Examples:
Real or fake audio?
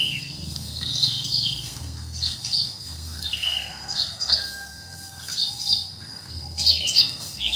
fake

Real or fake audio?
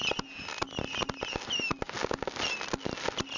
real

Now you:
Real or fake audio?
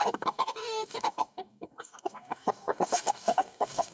fake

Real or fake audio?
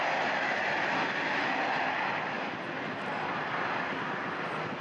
real